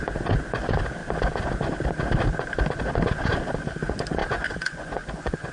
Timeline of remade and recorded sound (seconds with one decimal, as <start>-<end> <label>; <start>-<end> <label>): 0.0-4.2 recorded; 4.2-5.5 remade